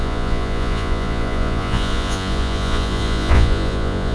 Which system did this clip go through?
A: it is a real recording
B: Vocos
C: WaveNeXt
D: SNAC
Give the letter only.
B